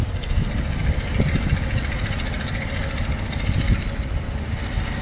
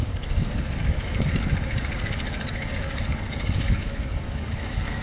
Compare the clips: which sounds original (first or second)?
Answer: first